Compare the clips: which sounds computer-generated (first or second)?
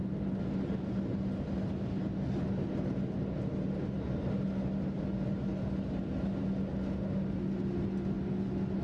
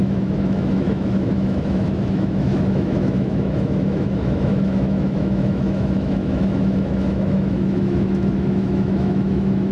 second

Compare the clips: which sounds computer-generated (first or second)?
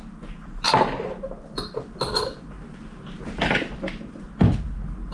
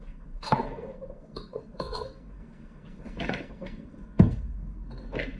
second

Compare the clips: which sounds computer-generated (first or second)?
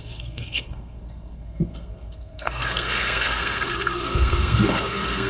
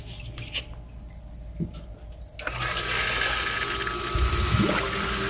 first